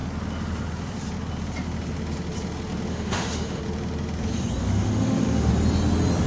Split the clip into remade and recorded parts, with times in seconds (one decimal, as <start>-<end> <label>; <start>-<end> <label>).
0.0-2.9 recorded; 2.9-3.6 remade; 3.6-4.6 recorded; 4.6-5.5 remade; 5.5-6.3 recorded